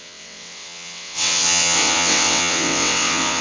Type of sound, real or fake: fake